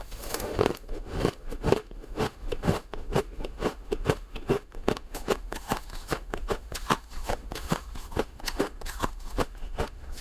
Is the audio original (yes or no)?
no